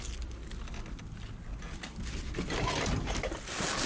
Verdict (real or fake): real